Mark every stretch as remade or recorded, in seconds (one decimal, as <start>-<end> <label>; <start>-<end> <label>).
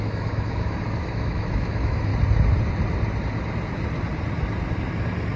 0.0-2.1 remade; 2.1-5.4 recorded